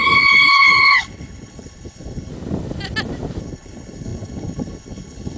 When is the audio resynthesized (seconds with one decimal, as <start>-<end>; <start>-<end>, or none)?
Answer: 0.0-2.3; 3.4-5.4